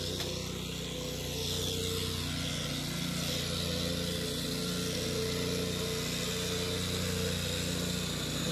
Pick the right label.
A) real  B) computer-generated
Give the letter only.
A